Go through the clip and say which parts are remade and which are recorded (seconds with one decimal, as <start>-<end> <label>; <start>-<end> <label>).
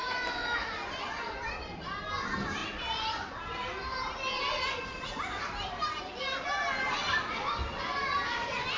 0.0-0.7 remade; 0.7-8.8 recorded